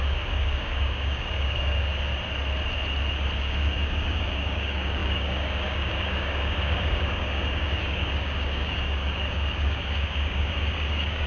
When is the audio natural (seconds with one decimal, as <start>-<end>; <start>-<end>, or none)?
2.1-3.4